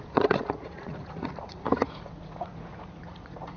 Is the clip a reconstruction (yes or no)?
yes